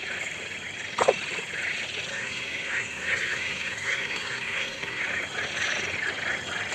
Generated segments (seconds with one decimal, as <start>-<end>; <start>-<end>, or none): 2.1-5.0